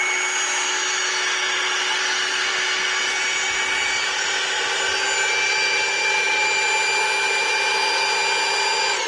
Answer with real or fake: real